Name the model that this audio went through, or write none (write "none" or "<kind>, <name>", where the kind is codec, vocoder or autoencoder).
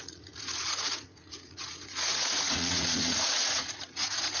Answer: vocoder, Vocos